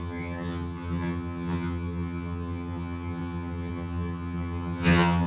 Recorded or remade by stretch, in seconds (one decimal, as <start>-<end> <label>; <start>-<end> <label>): 0.0-5.3 remade